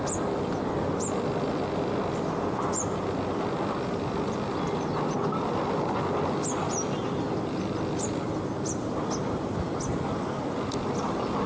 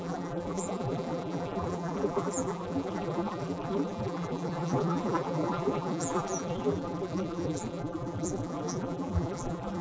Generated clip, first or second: second